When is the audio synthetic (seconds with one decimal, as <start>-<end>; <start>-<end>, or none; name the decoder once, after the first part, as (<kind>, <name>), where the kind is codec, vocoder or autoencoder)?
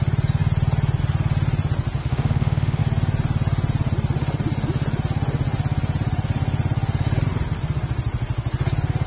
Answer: 2.0-2.8 (autoencoder, DAC-VAE)